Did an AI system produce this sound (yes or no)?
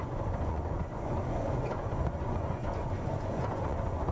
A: yes